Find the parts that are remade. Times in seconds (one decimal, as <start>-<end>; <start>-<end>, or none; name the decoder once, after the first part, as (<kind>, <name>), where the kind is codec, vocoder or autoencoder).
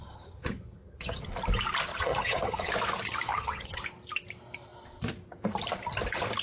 0.0-1.3 (vocoder, HiFi-GAN); 1.9-2.7; 3.3-3.8